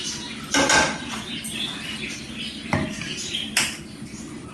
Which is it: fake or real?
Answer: real